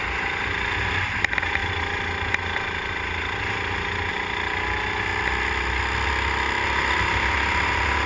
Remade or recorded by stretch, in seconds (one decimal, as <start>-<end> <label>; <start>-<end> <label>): 0.0-8.1 recorded